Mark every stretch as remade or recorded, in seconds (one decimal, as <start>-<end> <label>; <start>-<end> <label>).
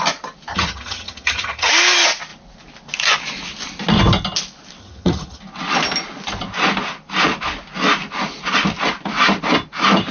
0.0-0.5 recorded; 0.5-1.7 remade; 1.7-4.8 recorded; 4.8-5.4 remade; 5.4-10.1 recorded